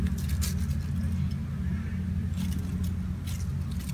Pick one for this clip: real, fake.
real